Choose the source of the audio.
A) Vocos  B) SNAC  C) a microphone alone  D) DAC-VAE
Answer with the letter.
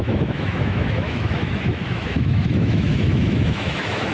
D